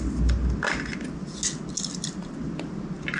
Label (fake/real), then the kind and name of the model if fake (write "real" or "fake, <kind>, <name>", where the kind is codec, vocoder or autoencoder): real